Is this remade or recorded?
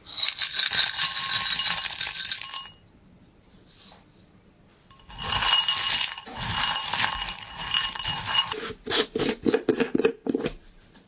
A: recorded